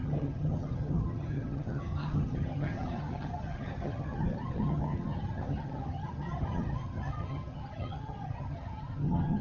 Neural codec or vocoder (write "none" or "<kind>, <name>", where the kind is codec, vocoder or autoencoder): vocoder, HiFi-GAN